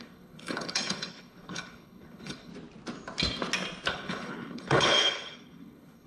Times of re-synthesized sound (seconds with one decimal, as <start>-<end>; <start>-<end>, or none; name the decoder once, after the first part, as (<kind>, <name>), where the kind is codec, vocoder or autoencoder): 0.0-2.5 (codec, HILCodec); 3.9-6.1